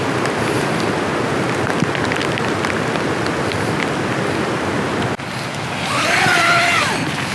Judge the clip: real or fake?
real